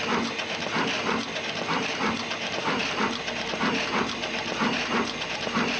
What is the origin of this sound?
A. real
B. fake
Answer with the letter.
A